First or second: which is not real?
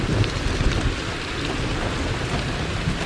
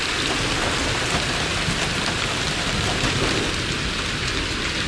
first